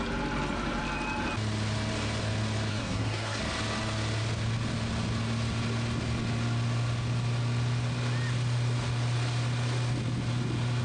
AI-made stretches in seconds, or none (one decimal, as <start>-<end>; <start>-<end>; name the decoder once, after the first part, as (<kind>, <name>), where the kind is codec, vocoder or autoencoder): 2.7-3.4 (codec, SNAC)